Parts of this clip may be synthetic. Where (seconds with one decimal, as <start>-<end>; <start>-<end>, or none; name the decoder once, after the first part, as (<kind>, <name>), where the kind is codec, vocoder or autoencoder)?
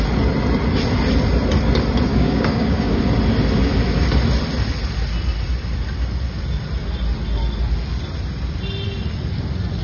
2.1-3.0 (codec, DAC)